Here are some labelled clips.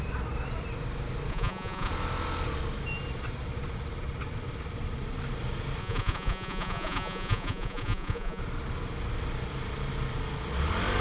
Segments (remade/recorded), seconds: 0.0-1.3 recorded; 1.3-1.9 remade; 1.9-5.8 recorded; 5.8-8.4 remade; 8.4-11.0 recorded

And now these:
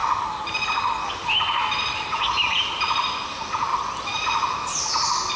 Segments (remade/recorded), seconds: 0.0-5.4 recorded

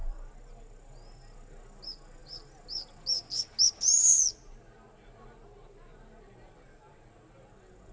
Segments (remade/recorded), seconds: 0.0-7.9 recorded

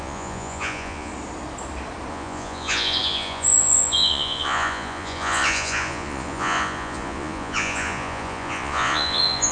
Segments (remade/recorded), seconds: 0.0-1.1 remade; 1.1-2.1 recorded; 2.1-9.5 remade